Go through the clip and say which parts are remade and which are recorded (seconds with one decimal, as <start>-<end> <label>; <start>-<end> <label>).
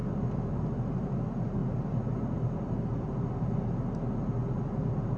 0.0-5.2 recorded